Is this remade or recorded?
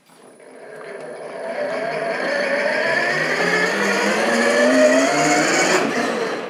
recorded